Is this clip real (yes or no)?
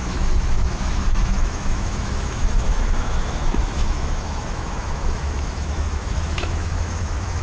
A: no